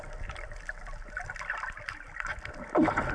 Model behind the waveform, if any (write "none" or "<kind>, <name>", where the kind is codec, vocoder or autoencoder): none